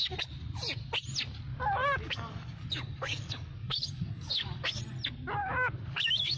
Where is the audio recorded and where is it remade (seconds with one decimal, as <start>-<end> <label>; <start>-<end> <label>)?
0.0-1.5 recorded; 1.5-4.8 remade; 4.8-5.4 recorded; 5.4-6.4 remade